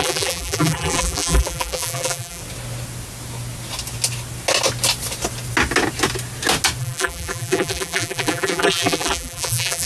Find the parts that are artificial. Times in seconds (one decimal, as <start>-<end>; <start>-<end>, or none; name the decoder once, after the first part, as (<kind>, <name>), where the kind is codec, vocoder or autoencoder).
0.0-2.4 (vocoder, BigVGAN v2); 6.8-9.9